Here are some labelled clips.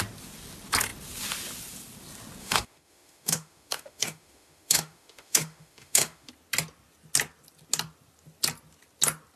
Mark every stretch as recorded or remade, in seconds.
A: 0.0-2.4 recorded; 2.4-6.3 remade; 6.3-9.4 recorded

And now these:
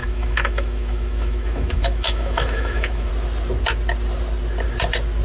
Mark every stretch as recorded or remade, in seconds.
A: 0.0-3.1 remade; 3.1-5.2 recorded

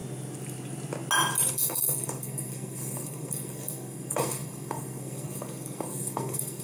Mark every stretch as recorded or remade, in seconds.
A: 0.0-1.5 recorded; 1.5-6.6 remade

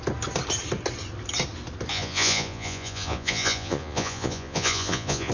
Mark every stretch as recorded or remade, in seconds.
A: 0.0-1.9 recorded; 1.9-5.3 remade

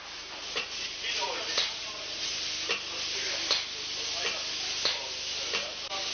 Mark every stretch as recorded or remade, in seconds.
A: 0.0-2.3 remade; 2.3-6.1 recorded

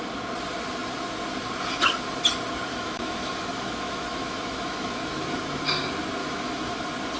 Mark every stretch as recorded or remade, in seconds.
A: 0.0-2.7 recorded; 2.7-5.6 remade; 5.6-6.2 recorded; 6.2-6.8 remade; 6.8-7.2 recorded

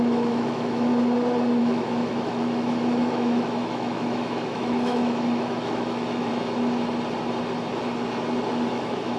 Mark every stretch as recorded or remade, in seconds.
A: 0.0-0.9 remade; 0.9-1.6 recorded; 1.6-6.3 remade; 6.3-8.7 recorded; 8.7-9.2 remade

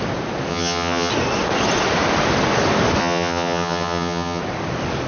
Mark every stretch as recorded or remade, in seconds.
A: 0.0-0.5 recorded; 0.5-1.1 remade; 1.1-3.0 recorded; 3.0-4.4 remade; 4.4-5.1 recorded